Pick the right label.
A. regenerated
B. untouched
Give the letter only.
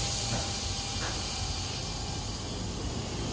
B